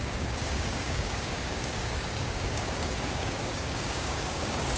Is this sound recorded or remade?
remade